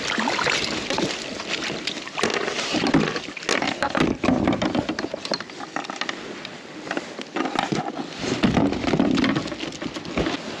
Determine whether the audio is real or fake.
real